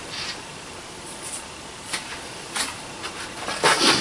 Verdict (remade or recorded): remade